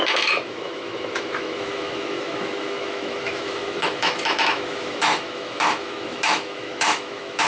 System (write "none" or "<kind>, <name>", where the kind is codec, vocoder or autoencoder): autoencoder, DAC-VAE